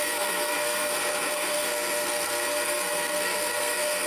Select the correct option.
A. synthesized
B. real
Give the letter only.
A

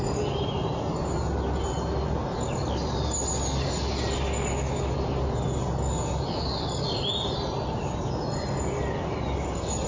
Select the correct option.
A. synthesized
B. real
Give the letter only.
B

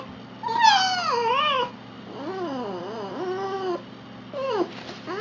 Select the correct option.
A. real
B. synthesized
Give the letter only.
A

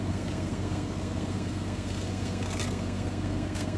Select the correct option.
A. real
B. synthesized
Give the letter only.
B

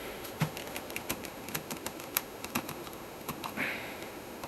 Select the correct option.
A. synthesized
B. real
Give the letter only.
A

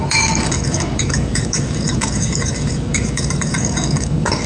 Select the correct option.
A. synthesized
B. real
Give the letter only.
A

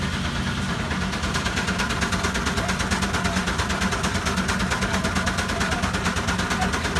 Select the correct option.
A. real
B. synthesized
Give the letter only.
A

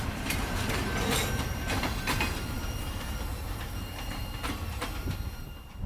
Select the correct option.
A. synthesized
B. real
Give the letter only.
A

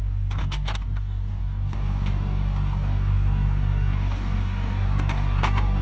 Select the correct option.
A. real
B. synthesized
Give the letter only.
B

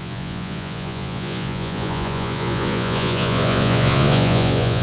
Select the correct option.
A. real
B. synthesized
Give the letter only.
B